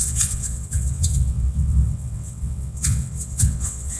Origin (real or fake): fake